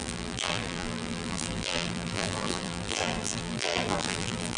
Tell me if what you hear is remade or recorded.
remade